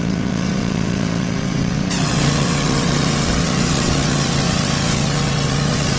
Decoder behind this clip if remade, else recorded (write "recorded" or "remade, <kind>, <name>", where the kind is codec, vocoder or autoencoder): remade, vocoder, WaveNeXt